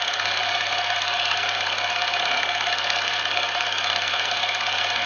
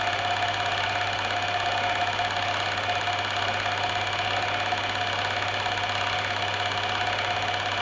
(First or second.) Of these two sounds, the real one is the second